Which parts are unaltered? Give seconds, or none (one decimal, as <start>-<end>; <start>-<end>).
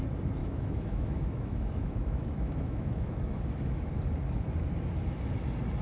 0.0-0.4; 3.9-5.8